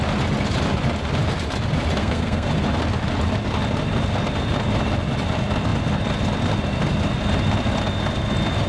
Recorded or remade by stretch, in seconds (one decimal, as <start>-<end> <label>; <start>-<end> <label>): 0.0-2.0 recorded; 2.0-2.5 remade; 2.5-8.7 recorded